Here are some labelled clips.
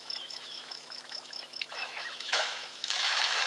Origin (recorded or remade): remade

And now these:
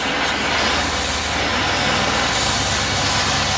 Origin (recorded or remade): recorded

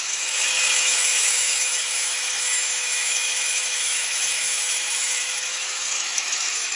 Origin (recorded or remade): remade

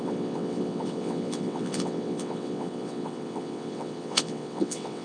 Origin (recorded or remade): remade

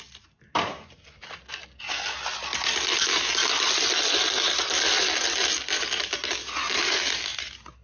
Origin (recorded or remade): recorded